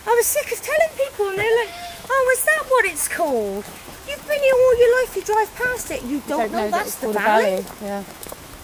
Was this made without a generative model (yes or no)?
no